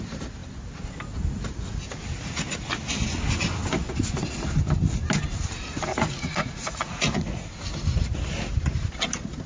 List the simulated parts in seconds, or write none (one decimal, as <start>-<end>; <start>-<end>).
5.9-7.5